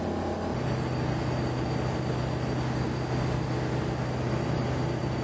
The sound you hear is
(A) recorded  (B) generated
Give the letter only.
A